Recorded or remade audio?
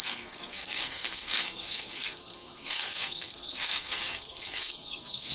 remade